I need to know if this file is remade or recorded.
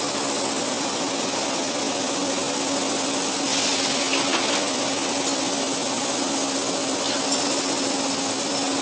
recorded